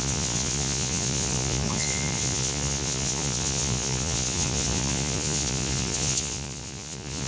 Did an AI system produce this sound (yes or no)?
yes